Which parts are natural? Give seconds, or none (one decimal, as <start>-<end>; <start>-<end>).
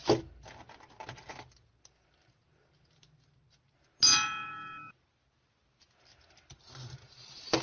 0.0-4.1; 4.9-7.6